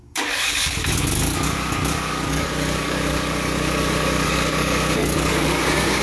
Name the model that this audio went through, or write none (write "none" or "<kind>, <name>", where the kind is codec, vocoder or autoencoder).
codec, DAC